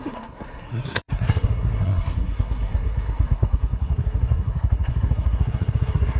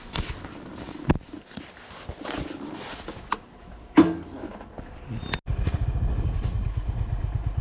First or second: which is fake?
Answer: first